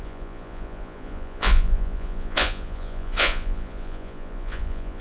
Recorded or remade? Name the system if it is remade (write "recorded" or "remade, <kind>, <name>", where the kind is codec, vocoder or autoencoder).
remade, vocoder, Vocos